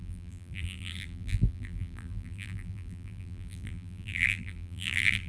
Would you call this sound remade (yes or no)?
yes